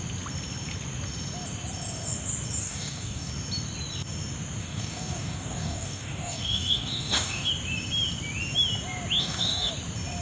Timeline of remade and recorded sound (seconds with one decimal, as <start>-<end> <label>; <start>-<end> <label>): 0.0-2.6 recorded; 2.6-3.3 remade; 3.3-4.6 recorded; 4.6-7.5 remade; 7.5-9.2 recorded; 9.2-9.7 remade; 9.7-10.2 recorded